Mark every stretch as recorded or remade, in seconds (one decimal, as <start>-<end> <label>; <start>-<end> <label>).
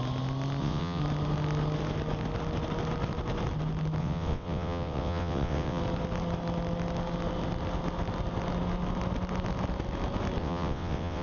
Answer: 0.0-0.6 recorded; 0.6-1.0 remade; 1.0-4.0 recorded; 4.0-5.8 remade; 5.8-10.4 recorded; 10.4-11.2 remade